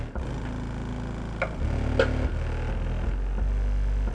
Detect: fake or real real